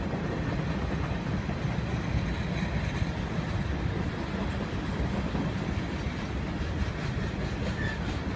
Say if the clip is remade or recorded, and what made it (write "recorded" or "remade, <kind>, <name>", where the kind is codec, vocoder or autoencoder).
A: recorded